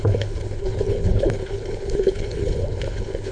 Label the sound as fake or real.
fake